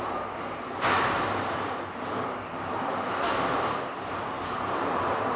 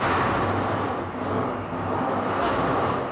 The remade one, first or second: first